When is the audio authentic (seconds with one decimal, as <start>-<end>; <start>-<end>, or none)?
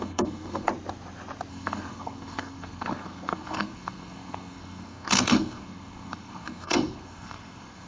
0.7-1.5